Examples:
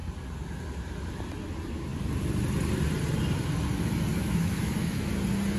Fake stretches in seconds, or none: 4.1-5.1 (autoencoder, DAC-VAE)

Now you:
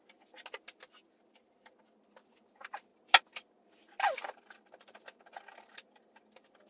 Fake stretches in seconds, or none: none

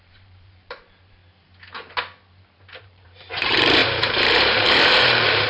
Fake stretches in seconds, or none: 0.0-1.2 (vocoder, BigVGAN v2); 2.8-5.5